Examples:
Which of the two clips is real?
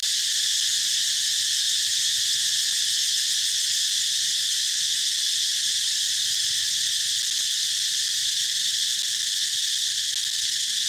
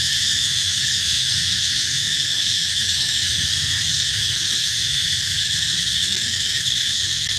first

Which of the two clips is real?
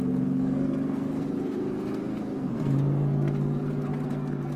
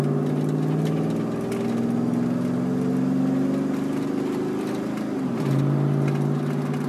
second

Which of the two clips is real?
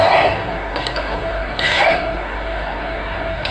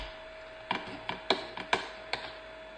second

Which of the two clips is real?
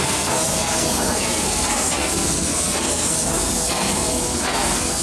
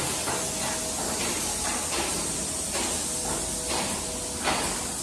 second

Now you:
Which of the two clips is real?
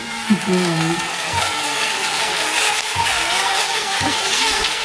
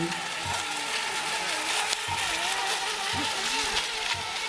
second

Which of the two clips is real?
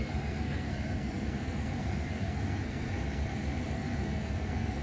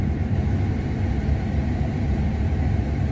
second